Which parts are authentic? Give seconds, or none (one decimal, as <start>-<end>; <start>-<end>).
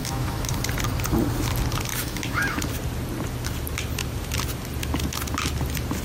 0.5-1.9; 2.6-6.0